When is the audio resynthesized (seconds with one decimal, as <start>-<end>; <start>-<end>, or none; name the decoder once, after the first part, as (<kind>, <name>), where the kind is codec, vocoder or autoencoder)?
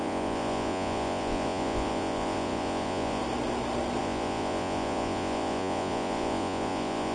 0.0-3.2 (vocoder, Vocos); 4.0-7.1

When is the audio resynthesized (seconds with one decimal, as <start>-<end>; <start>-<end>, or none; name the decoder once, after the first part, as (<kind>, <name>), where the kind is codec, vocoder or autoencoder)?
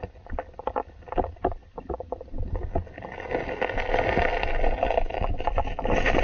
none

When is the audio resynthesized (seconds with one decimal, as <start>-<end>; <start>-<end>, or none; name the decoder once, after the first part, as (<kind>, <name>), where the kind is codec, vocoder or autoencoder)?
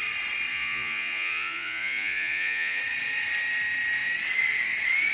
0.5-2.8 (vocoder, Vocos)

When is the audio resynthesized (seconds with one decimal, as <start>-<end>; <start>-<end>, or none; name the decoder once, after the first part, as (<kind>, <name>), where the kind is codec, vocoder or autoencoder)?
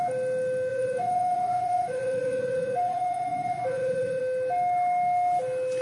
0.7-4.2 (vocoder, Vocos)